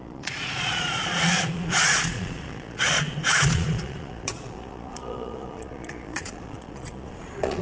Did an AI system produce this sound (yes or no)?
yes